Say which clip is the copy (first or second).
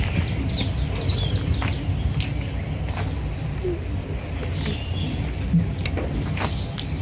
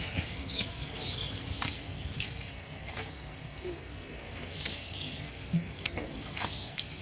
second